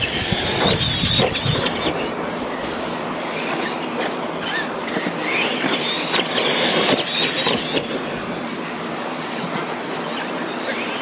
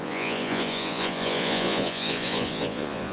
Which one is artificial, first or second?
second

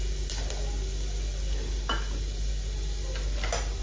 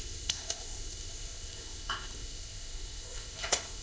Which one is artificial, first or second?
second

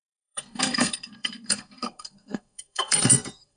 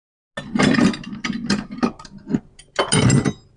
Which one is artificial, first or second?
first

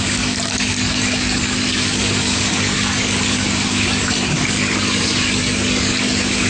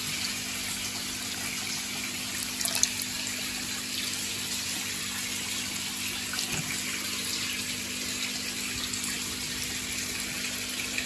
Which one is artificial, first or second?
first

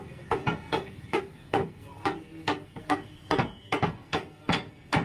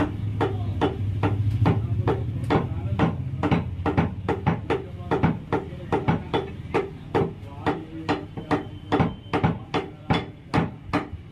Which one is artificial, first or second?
first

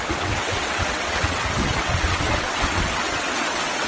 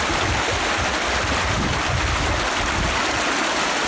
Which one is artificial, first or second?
first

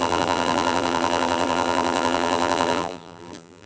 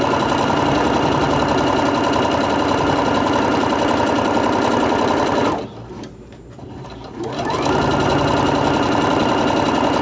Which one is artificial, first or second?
first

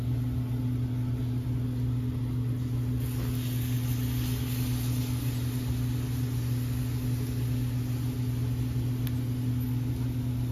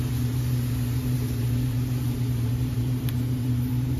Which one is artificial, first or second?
second